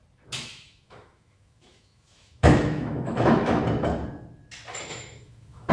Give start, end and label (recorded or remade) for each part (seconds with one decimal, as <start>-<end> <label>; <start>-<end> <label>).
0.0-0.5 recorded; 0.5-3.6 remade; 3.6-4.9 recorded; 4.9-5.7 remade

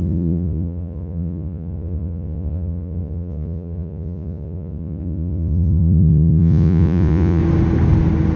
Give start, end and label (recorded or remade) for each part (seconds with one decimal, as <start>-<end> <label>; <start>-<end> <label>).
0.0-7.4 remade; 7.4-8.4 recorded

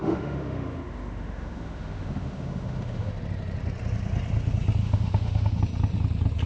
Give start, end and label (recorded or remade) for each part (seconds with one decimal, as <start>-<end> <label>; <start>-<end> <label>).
0.0-3.1 remade; 3.1-4.8 recorded; 4.8-5.6 remade; 5.6-6.5 recorded